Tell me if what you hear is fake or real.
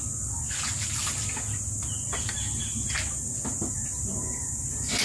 real